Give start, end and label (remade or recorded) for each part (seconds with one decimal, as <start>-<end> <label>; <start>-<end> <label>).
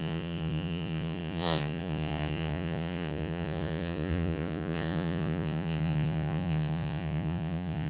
0.0-7.9 remade